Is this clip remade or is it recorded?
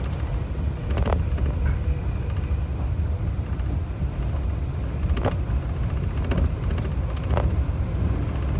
recorded